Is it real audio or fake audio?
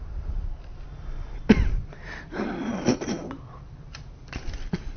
fake